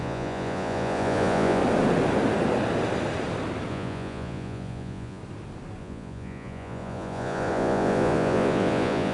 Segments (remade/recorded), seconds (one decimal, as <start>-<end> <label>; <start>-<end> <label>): 0.0-1.6 remade; 1.6-3.7 recorded; 3.7-5.2 remade; 5.2-5.8 recorded; 5.8-9.1 remade

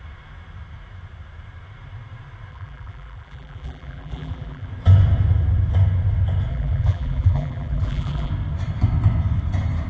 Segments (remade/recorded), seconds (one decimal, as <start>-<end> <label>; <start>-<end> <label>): 0.0-2.5 recorded; 2.5-4.7 remade; 4.7-6.5 recorded; 6.5-8.3 remade; 8.3-9.9 recorded

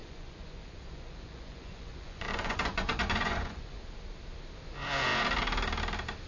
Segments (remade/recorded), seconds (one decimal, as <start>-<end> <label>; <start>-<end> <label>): 0.0-3.8 remade; 3.8-6.3 recorded

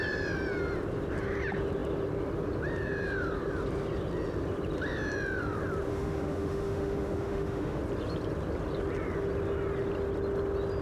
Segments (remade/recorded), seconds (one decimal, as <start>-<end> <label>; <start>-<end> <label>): 0.0-5.9 recorded; 5.9-7.8 remade; 7.8-10.8 recorded

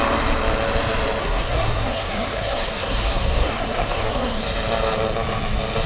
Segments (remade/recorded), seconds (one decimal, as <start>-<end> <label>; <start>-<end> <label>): 0.0-1.2 recorded; 1.2-4.4 remade; 4.4-5.9 recorded

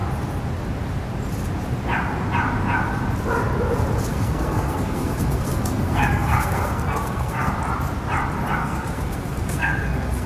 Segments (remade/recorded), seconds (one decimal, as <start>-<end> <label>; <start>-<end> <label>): 0.0-4.1 recorded; 4.1-7.5 remade; 7.5-8.6 recorded; 8.6-10.3 remade